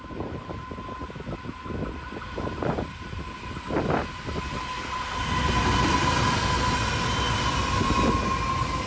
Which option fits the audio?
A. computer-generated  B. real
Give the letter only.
B